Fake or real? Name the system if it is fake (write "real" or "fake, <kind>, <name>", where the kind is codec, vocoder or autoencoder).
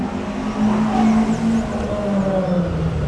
real